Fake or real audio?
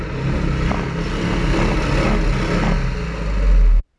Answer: real